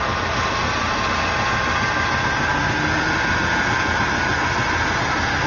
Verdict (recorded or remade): recorded